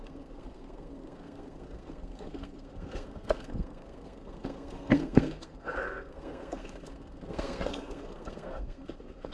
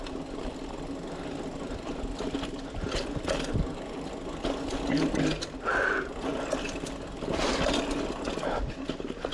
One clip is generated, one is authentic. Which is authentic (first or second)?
second